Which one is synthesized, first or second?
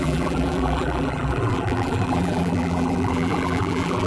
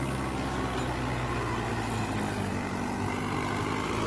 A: first